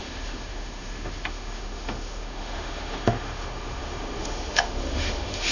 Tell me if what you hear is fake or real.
fake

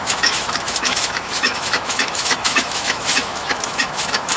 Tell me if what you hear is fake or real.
fake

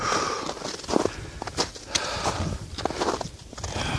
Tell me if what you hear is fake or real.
real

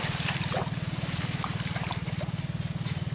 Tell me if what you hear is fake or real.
real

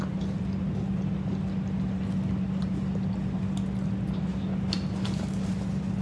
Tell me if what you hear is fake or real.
real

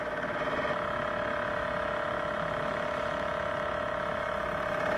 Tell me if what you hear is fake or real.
fake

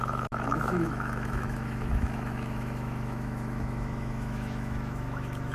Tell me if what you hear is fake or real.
fake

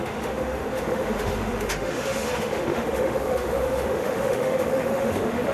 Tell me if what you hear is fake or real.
fake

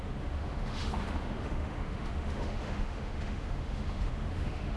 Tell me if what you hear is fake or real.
fake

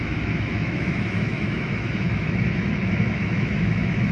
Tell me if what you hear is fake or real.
fake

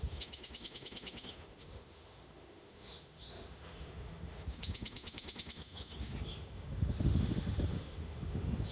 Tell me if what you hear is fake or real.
fake